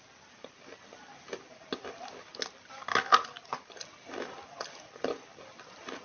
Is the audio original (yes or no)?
yes